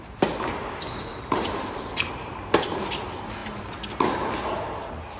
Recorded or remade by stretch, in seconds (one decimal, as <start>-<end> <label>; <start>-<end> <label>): 0.0-1.1 recorded; 1.1-2.9 remade; 2.9-5.2 recorded